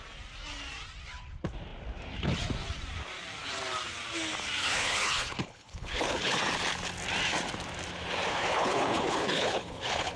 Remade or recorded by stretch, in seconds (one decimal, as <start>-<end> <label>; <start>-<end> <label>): 0.0-4.6 recorded; 4.6-6.4 remade; 6.4-8.3 recorded; 8.3-10.2 remade